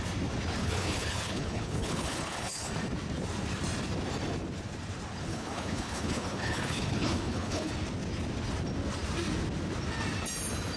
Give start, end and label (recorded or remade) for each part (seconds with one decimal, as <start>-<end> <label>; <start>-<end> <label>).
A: 0.0-0.6 recorded; 0.6-2.7 remade; 2.7-5.3 recorded; 5.3-7.7 remade; 7.7-10.8 recorded